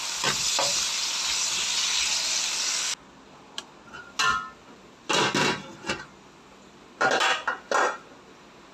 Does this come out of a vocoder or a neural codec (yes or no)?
no